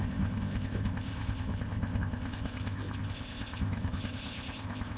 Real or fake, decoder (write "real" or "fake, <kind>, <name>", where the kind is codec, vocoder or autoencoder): fake, codec, ZipCodec